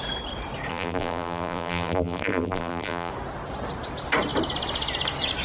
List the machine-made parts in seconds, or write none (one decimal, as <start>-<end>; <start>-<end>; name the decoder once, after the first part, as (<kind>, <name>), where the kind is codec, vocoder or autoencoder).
0.7-3.1 (vocoder, BigVGAN v2)